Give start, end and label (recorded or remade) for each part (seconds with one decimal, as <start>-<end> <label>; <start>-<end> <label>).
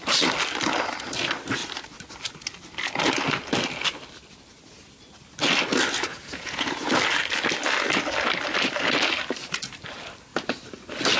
0.0-6.1 recorded; 6.1-6.9 remade; 6.9-11.2 recorded